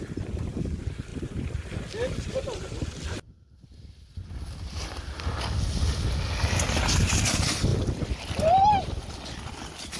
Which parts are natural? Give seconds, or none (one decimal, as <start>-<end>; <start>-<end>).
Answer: 0.0-10.0